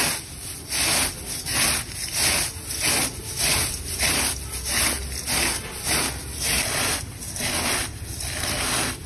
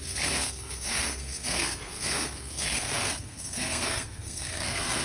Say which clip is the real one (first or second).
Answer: first